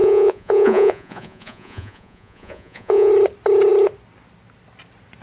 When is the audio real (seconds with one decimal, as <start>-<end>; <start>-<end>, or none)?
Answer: 3.1-5.2